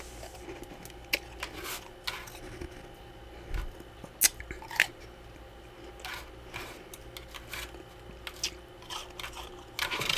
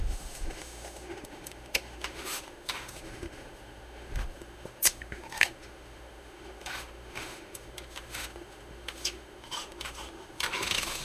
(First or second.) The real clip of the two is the first